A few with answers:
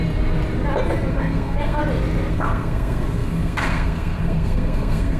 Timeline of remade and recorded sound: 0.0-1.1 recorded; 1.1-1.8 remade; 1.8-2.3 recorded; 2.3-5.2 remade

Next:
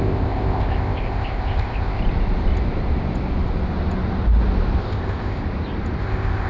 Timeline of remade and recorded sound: 0.0-2.0 remade; 2.0-4.8 recorded; 4.8-5.4 remade; 5.4-6.0 recorded; 6.0-6.5 remade